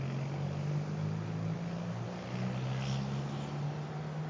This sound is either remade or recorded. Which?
recorded